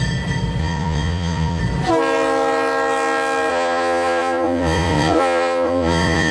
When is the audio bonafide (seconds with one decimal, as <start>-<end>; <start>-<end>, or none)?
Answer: 0.0-0.6; 1.6-3.5

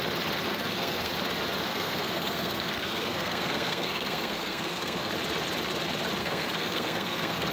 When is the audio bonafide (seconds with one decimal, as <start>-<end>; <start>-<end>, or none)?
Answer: 0.0-0.5; 1.1-1.7; 5.1-6.2

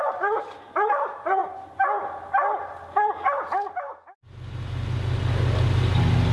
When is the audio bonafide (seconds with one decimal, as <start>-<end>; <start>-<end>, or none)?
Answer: 0.0-6.3